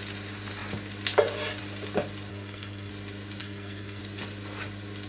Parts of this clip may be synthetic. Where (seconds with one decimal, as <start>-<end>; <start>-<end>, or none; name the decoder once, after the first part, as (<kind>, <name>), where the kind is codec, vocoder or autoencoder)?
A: 2.3-2.9 (codec, SNAC); 3.4-4.0